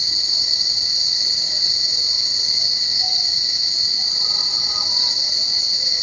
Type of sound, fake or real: real